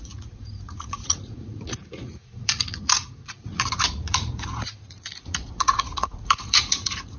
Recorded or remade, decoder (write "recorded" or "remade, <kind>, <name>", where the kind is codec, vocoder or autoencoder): remade, vocoder, Vocos